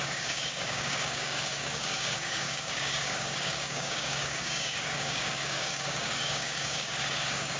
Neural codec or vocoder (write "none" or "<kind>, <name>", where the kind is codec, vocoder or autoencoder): codec, DAC